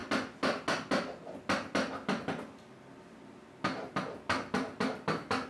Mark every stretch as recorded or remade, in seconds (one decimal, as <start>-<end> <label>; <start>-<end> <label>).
0.0-5.5 recorded